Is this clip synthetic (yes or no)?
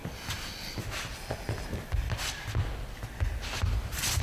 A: no